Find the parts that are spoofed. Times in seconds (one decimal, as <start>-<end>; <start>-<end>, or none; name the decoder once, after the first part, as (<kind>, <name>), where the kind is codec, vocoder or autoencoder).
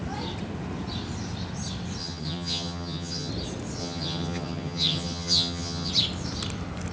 2.0-3.3 (vocoder, HiFi-GAN); 3.8-5.9